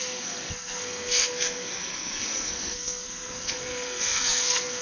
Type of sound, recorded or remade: remade